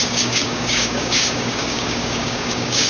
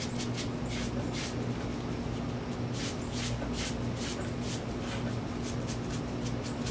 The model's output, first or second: first